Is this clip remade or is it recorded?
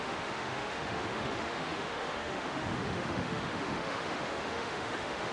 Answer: remade